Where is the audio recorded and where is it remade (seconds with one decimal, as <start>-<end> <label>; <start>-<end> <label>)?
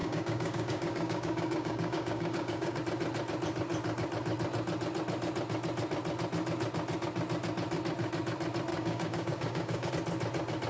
0.0-2.8 remade; 2.8-8.7 recorded; 8.7-9.9 remade; 9.9-10.7 recorded